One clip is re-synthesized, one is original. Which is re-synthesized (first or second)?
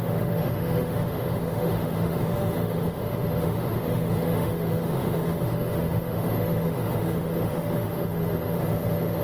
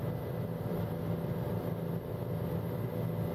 first